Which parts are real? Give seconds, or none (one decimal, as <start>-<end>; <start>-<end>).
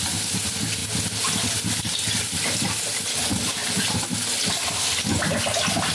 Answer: 0.0-5.9